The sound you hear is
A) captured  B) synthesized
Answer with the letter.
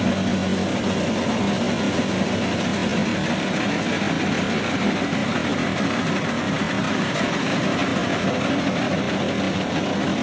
A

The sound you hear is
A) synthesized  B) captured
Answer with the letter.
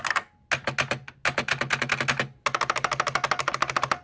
B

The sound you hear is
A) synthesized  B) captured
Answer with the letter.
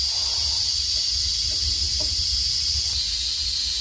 B